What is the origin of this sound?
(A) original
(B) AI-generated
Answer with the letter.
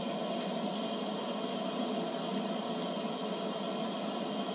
A